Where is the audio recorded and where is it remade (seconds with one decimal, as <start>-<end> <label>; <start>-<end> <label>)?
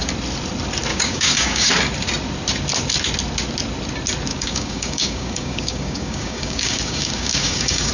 0.0-0.9 recorded; 0.9-1.7 remade; 1.7-4.3 recorded; 4.3-7.9 remade